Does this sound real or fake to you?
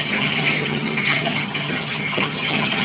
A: fake